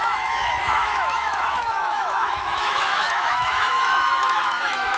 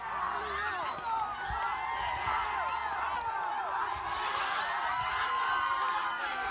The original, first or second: second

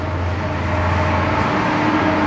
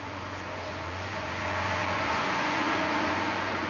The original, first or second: first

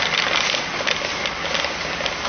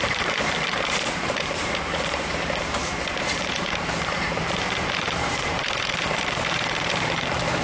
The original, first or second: first